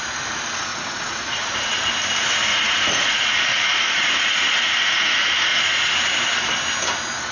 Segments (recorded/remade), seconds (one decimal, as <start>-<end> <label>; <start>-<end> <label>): 0.0-0.7 recorded; 0.7-1.9 remade; 1.9-2.5 recorded; 2.5-5.6 remade; 5.6-7.3 recorded